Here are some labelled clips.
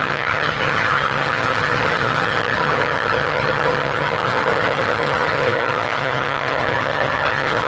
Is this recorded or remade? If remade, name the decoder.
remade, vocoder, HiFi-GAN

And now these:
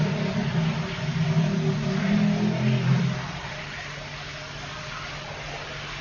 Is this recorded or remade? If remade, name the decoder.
recorded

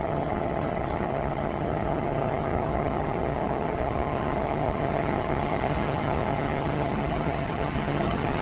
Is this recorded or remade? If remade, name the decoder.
remade, vocoder, HiFi-GAN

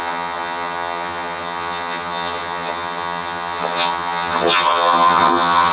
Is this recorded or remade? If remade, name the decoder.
remade, vocoder, HiFi-GAN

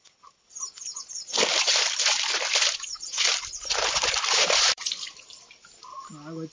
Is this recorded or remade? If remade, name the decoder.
recorded